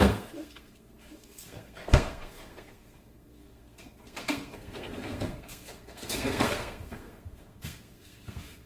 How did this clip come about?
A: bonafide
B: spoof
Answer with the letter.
B